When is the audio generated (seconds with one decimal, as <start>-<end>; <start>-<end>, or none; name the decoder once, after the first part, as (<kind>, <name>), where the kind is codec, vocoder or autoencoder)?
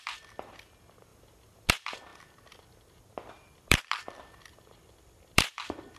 2.1-6.0 (vocoder, BigVGAN v2)